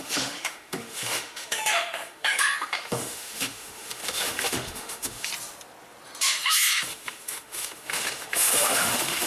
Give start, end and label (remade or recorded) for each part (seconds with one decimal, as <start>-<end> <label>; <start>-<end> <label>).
0.0-5.3 remade; 5.3-6.2 recorded; 6.2-9.3 remade